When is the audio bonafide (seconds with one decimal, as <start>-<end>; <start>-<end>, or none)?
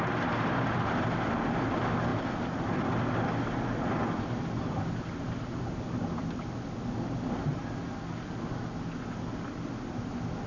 0.0-10.5